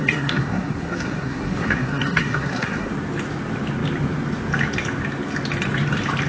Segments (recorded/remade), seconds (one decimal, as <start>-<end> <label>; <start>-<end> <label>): 0.0-2.9 remade; 2.9-6.3 recorded